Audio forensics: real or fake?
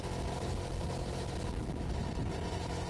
real